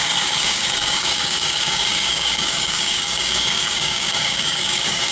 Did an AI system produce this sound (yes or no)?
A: yes